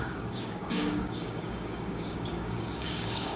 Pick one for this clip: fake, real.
fake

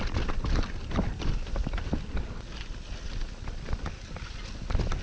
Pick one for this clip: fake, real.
real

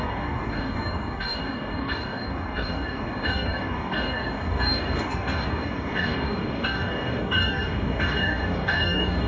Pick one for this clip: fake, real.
fake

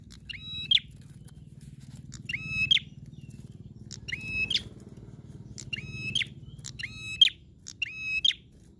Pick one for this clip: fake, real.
real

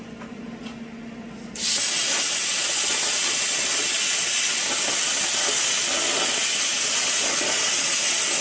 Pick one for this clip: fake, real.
real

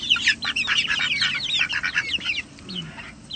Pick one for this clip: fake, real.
real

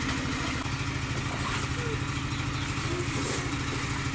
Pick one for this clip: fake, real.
real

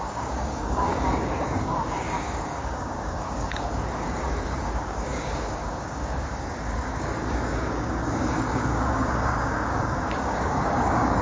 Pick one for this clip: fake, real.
fake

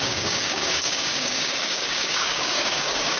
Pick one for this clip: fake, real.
fake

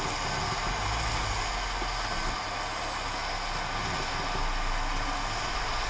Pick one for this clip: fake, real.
real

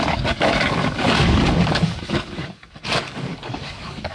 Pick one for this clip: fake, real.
fake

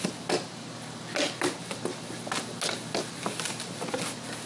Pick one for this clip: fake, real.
real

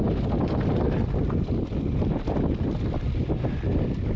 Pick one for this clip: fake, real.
real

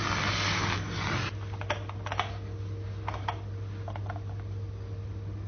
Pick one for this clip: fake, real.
real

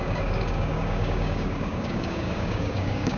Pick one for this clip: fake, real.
fake